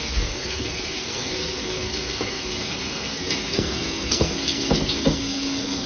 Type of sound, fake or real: fake